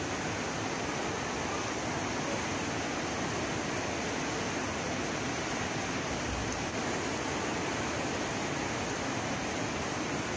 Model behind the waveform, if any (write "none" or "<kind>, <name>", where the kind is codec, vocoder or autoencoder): none